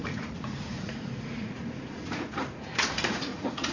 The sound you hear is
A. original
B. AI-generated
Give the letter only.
B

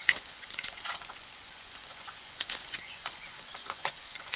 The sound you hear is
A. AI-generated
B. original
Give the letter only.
A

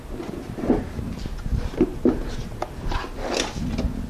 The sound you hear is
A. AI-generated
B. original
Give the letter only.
B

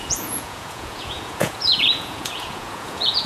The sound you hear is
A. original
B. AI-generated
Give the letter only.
B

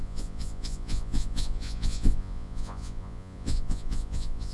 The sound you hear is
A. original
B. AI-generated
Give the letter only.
B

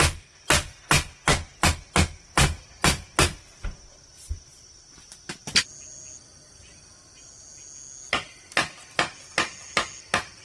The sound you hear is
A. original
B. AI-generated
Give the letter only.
A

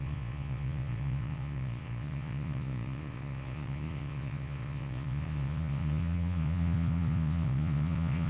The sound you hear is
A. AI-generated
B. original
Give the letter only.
A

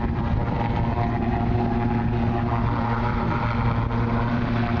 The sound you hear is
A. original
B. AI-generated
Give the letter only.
A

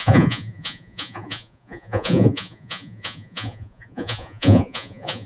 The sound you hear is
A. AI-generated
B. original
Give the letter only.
A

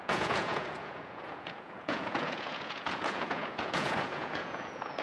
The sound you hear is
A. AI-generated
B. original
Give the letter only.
A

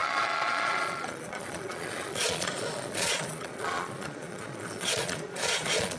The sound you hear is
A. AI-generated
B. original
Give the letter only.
A